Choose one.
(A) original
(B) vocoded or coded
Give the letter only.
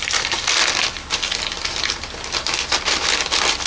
A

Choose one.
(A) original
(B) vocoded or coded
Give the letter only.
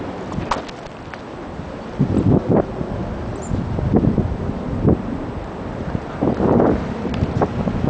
A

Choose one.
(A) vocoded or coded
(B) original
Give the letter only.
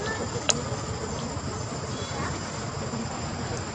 B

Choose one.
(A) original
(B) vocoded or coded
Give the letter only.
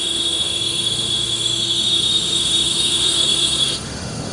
B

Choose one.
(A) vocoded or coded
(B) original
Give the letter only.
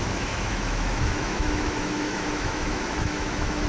A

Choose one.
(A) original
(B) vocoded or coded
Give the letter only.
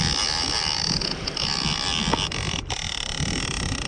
A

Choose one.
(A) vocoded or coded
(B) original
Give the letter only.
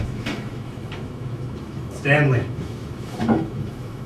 A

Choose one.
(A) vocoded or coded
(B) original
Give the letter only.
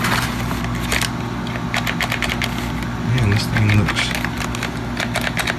B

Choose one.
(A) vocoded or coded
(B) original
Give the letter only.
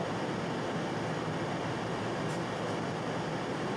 B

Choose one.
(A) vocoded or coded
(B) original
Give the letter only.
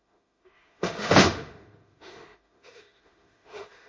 A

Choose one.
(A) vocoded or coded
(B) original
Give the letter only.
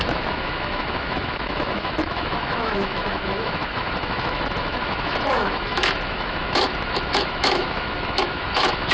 A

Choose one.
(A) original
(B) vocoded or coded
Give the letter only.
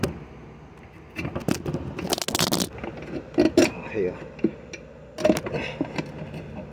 A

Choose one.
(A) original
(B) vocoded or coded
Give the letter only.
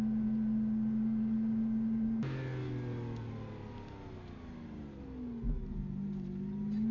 A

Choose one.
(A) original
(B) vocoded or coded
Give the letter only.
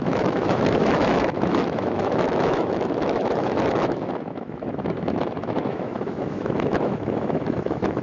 B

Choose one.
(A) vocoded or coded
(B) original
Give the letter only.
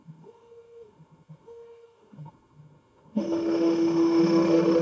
A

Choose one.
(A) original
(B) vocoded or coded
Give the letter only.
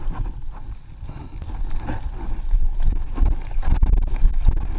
A